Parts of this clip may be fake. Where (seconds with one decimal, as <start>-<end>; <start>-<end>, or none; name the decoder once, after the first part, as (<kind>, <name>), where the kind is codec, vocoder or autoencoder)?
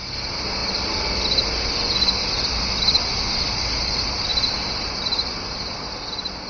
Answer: none